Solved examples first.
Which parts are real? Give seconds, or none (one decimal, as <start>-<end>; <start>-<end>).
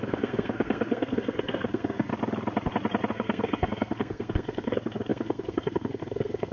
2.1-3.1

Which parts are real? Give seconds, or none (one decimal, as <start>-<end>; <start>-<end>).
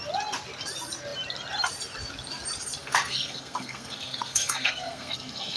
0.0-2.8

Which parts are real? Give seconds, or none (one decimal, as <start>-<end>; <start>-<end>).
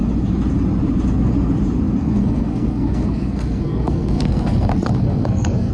0.0-2.0